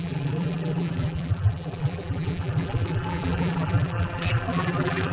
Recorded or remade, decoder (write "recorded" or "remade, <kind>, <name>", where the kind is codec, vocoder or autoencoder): remade, vocoder, BigVGAN v2